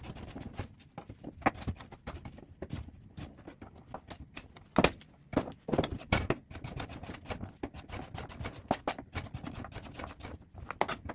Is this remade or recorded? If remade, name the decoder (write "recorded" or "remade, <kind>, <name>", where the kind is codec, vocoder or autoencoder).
recorded